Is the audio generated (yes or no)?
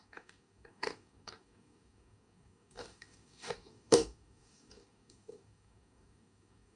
yes